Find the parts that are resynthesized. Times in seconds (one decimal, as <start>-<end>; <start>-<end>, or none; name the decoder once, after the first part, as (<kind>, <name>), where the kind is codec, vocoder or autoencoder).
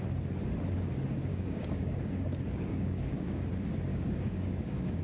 1.3-3.5 (codec, DAC); 3.9-5.0